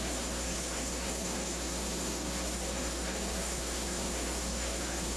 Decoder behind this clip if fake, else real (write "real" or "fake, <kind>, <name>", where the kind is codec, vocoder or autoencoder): fake, codec, SNAC